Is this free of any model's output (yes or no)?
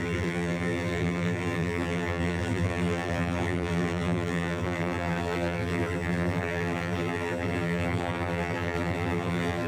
no